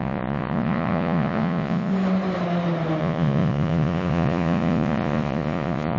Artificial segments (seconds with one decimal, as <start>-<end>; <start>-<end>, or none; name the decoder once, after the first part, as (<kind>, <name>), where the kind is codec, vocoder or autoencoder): 0.0-1.9 (vocoder, Vocos); 3.0-6.0